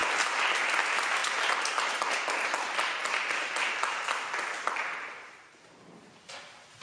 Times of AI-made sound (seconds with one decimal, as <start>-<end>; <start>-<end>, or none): none